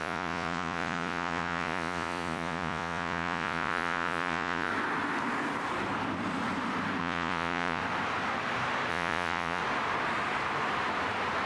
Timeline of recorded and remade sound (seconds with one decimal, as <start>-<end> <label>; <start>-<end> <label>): 0.0-4.7 remade; 4.7-7.0 recorded; 7.0-7.8 remade; 7.8-8.9 recorded; 8.9-9.6 remade; 9.6-11.5 recorded